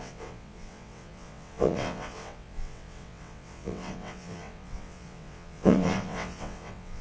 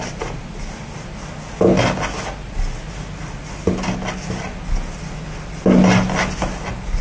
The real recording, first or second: second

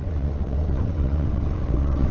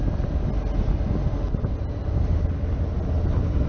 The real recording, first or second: second